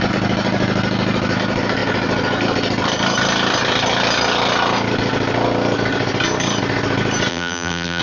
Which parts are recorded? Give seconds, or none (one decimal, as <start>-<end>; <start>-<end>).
0.0-7.3